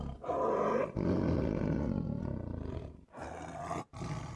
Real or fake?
real